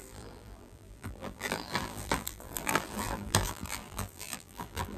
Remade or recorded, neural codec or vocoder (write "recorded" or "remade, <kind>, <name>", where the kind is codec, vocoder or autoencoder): remade, vocoder, BigVGAN v2